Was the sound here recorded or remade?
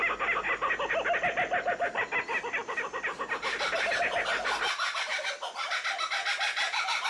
recorded